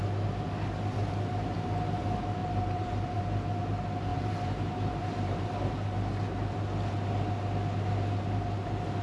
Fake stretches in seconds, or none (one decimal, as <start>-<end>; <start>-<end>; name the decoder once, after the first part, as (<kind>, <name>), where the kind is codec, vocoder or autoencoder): 2.4-3.2 (vocoder, BigVGAN v2); 4.1-5.7

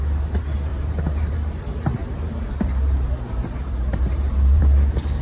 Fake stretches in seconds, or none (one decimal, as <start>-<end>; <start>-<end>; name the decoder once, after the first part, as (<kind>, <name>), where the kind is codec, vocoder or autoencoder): 0.7-1.6 (vocoder, BigVGAN v2); 2.0-4.6

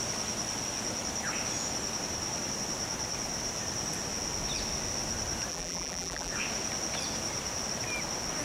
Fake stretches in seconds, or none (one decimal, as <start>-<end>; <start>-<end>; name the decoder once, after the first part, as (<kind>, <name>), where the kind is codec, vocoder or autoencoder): 5.5-6.3 (vocoder, BigVGAN v2)

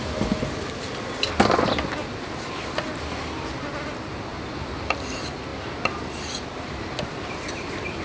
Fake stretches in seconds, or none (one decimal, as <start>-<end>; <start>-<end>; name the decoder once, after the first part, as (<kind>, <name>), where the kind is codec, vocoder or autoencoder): 2.0-3.6 (vocoder, BigVGAN v2); 5.5-8.0

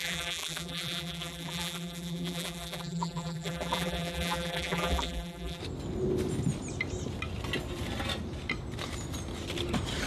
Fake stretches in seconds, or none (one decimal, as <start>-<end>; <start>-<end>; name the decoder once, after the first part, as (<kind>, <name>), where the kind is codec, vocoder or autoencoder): 0.0-5.6 (vocoder, BigVGAN v2)

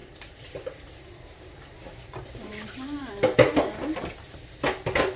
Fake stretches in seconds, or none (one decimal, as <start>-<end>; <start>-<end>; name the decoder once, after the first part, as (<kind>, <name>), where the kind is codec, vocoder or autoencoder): 0.0-3.1 (vocoder, BigVGAN v2)